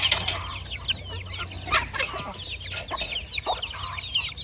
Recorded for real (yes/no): yes